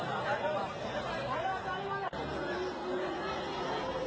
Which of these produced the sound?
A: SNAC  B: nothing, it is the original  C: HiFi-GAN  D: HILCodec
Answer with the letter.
B